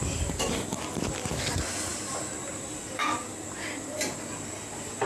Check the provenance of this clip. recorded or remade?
recorded